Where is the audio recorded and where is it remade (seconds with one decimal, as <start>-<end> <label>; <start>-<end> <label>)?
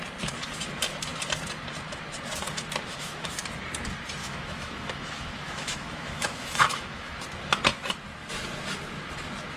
0.0-2.9 recorded; 2.9-3.4 remade; 3.4-4.2 recorded; 4.2-7.2 remade; 7.2-9.6 recorded